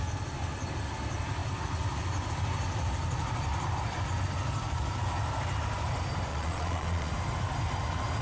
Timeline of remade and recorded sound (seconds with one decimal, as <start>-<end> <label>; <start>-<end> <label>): 0.0-6.3 recorded; 6.3-7.1 remade; 7.1-8.2 recorded